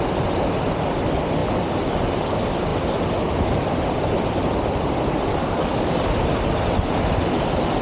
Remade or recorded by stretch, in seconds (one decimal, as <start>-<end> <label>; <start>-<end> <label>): 0.0-5.3 recorded; 5.3-6.1 remade; 6.1-7.8 recorded